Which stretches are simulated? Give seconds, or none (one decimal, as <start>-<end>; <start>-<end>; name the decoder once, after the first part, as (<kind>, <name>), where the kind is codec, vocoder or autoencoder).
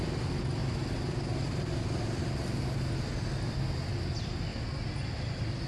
none